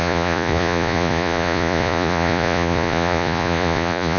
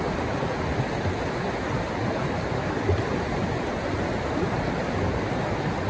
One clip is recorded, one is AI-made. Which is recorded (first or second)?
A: second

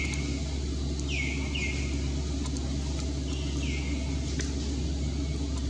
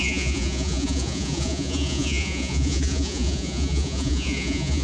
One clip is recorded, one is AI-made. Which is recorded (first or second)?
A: first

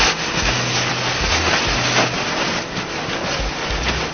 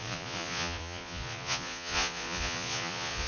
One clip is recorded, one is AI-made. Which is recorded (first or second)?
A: first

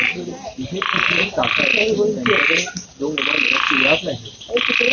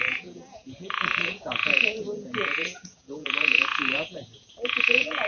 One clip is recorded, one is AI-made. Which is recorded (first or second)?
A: first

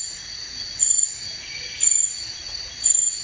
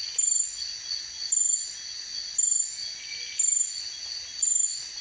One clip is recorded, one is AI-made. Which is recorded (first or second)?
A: second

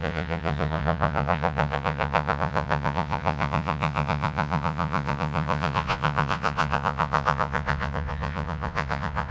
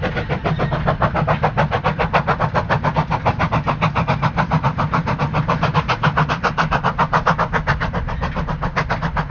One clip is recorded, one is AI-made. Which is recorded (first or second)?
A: second